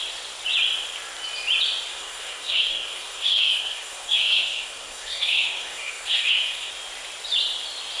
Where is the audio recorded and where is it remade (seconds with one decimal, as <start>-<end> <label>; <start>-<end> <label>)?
0.0-1.9 recorded; 1.9-6.7 remade; 6.7-8.0 recorded